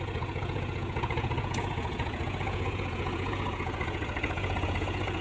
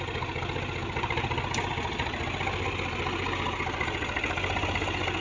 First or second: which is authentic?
second